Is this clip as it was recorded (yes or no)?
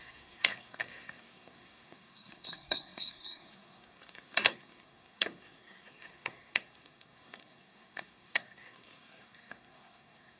no